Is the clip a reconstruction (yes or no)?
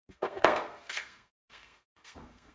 yes